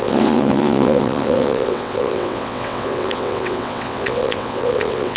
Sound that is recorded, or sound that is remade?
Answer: remade